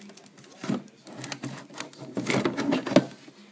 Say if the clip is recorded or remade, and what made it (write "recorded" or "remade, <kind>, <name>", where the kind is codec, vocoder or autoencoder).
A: recorded